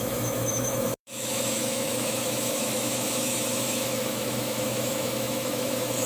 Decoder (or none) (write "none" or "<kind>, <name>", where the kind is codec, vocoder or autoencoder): autoencoder, DAC-VAE